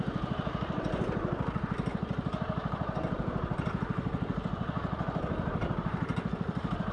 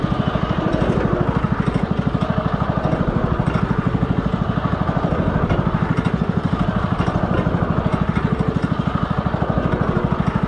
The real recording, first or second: second